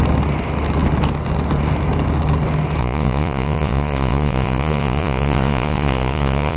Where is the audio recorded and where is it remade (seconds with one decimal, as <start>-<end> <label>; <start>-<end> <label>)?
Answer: 0.0-2.8 recorded; 2.8-6.6 remade